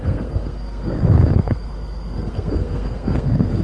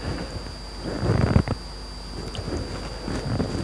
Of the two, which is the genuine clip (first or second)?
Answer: second